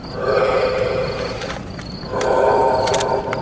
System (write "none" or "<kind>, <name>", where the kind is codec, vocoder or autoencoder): none